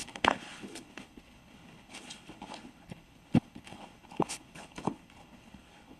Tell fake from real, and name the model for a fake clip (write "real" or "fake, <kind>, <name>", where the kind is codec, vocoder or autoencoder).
fake, codec, HILCodec